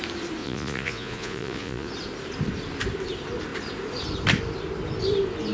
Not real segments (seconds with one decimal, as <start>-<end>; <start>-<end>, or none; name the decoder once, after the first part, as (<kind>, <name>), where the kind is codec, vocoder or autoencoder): 0.4-1.9 (vocoder, Vocos)